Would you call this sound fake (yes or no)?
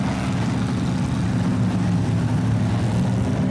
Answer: no